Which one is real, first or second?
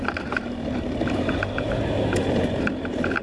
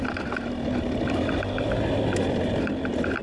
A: second